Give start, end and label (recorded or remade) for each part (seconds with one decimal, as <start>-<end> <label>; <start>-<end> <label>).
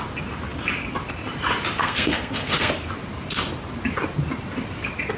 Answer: 0.0-1.8 recorded; 1.8-2.7 remade; 2.7-5.2 recorded